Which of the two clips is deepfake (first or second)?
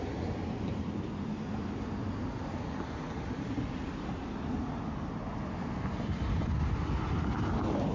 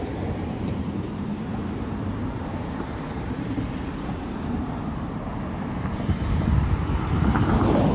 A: second